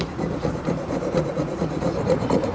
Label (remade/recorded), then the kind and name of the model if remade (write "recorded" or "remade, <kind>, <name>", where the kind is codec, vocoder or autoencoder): remade, vocoder, Vocos